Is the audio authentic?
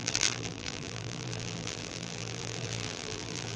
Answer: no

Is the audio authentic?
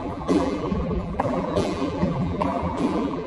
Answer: no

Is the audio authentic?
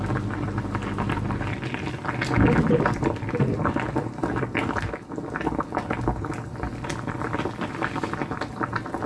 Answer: yes